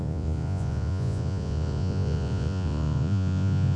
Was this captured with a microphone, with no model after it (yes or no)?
no